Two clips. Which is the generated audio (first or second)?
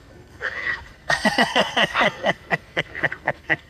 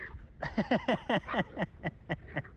first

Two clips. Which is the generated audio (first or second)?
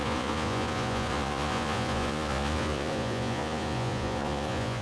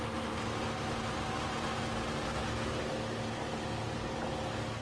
first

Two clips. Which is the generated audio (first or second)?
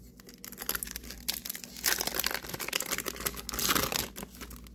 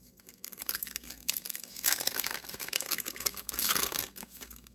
second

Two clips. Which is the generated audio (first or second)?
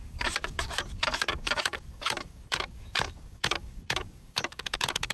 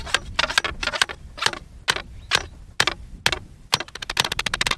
first